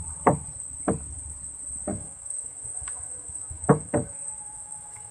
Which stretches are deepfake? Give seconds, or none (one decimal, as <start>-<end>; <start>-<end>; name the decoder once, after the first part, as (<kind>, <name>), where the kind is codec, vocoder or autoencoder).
1.9-5.1 (autoencoder, DAC-VAE)